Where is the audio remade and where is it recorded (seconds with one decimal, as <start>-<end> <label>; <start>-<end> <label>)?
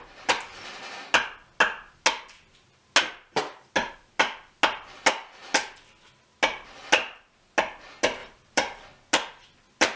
0.0-8.2 recorded; 8.2-8.9 remade; 8.9-10.0 recorded